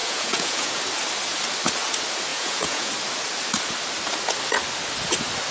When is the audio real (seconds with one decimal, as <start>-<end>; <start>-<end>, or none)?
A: 0.8-2.3; 2.9-5.5